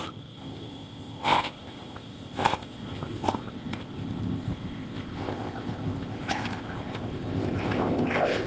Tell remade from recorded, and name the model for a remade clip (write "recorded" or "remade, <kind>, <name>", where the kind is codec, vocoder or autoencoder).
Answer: remade, codec, ZipCodec